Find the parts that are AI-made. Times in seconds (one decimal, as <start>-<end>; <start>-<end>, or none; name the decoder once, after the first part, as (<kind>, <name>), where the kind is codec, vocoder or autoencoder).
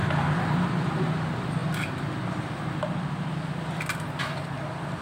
none